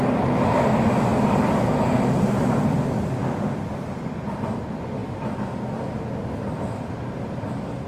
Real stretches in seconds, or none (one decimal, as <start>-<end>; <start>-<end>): 0.0-1.1; 1.6-7.9